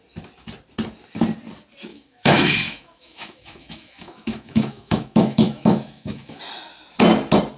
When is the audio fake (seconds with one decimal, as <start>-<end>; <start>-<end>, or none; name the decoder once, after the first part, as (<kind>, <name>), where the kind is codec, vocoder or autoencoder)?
1.9-6.4 (autoencoder, DAC-VAE)